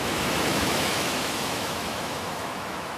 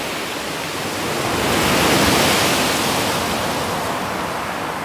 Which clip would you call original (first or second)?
second